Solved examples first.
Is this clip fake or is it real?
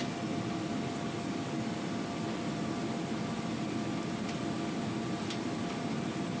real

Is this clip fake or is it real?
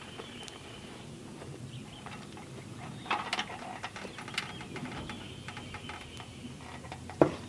real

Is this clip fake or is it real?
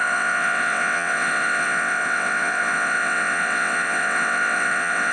fake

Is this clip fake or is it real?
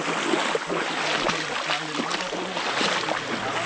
real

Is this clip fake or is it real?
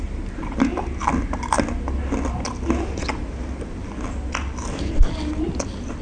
real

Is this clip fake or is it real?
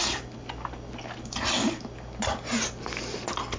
real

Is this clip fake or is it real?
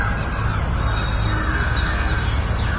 real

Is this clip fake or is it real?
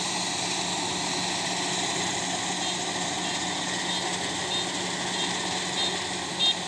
real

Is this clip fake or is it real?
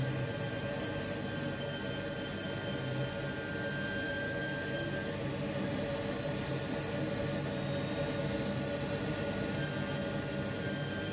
real